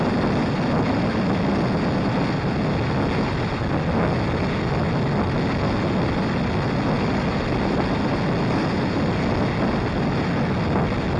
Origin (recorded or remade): recorded